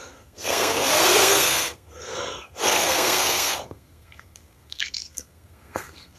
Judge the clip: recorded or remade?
remade